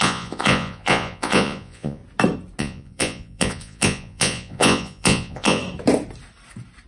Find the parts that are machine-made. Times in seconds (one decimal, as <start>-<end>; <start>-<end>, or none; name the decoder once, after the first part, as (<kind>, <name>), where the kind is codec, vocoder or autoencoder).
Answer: 0.0-2.0 (vocoder, Vocos); 2.6-5.6